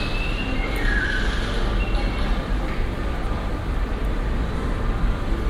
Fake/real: fake